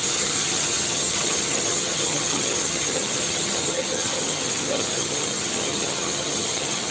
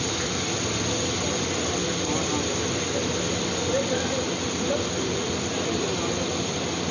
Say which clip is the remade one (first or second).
first